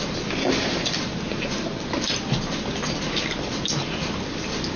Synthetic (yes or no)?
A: no